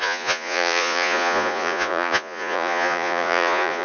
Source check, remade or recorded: remade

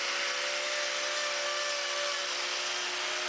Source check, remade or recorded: recorded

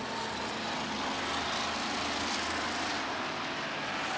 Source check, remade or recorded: recorded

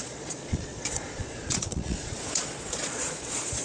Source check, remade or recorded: remade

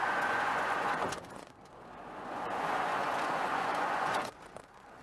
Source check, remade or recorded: remade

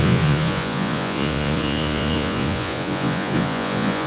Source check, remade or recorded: remade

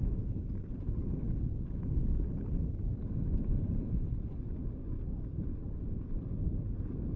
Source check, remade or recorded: recorded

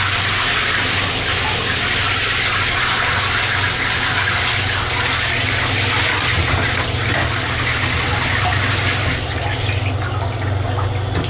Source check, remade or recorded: recorded